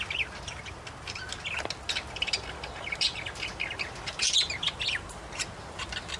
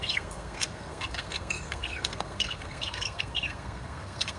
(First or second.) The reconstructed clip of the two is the second